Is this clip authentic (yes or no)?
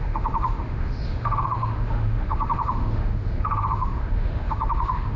no